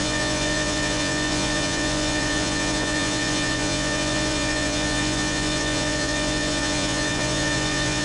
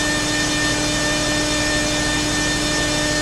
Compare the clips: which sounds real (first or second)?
second